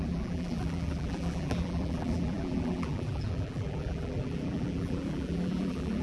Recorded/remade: remade